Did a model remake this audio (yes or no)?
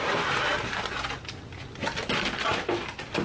no